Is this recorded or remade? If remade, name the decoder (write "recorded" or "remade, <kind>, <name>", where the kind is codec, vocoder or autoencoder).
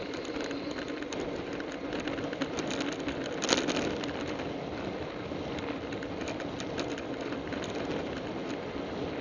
recorded